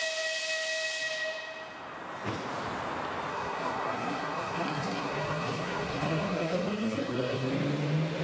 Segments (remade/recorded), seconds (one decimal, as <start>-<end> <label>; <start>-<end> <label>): 0.0-3.3 recorded; 3.3-7.5 remade; 7.5-8.2 recorded